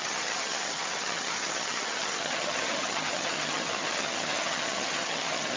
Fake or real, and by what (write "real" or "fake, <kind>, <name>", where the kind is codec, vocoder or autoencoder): fake, vocoder, HiFi-GAN